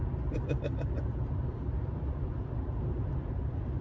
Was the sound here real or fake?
fake